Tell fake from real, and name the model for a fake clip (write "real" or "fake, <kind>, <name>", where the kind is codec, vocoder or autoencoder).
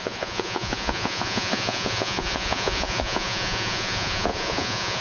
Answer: fake, vocoder, Vocos